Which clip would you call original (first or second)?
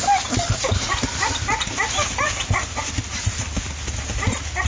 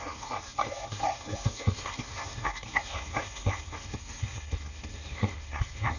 first